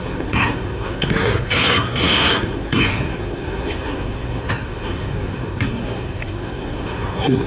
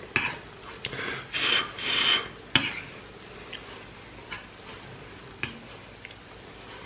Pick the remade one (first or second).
first